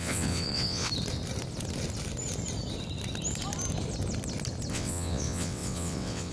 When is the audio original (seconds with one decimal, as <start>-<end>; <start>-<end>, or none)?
0.9-4.7